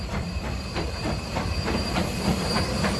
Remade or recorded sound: remade